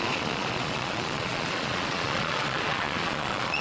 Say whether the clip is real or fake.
fake